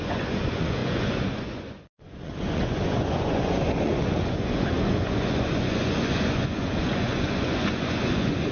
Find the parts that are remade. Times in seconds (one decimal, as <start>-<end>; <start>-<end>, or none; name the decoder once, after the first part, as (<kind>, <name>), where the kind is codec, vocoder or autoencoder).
0.0-8.5 (vocoder, Vocos)